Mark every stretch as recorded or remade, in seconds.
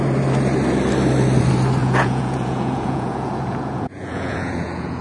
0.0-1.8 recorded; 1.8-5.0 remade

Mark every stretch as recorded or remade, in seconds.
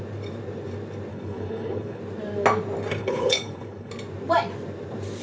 0.0-1.1 recorded; 1.1-2.0 remade; 2.0-3.0 recorded; 3.0-3.9 remade; 3.9-5.2 recorded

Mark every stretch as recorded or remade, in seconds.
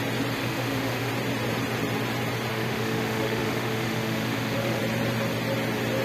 0.0-0.4 recorded; 0.4-1.1 remade; 1.1-2.5 recorded; 2.5-4.8 remade; 4.8-6.0 recorded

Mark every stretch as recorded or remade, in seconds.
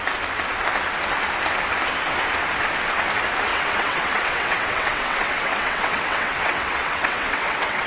0.0-3.5 recorded; 3.5-7.9 remade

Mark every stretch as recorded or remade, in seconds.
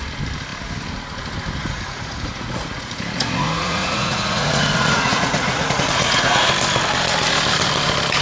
0.0-1.6 recorded; 1.6-6.5 remade; 6.5-8.2 recorded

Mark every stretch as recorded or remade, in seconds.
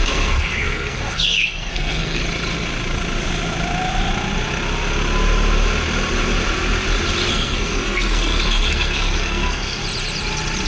0.0-2.2 remade; 2.2-7.3 recorded; 7.3-9.8 remade; 9.8-10.7 recorded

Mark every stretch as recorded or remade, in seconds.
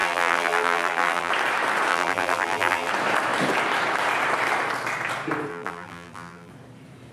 0.0-1.3 remade; 1.3-1.9 recorded; 1.9-2.9 remade; 2.9-5.5 recorded; 5.5-6.5 remade; 6.5-7.1 recorded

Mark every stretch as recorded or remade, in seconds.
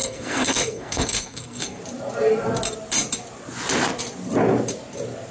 0.0-1.8 remade; 1.8-5.3 recorded